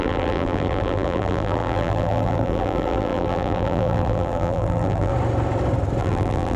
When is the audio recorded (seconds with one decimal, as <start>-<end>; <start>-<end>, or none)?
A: 5.1-6.0